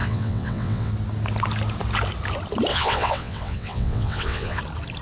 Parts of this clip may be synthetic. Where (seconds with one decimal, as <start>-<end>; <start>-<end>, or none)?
0.0-0.9; 2.7-4.6

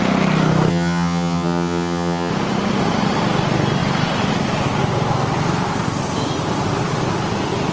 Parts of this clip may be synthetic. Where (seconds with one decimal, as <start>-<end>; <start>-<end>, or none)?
0.7-2.3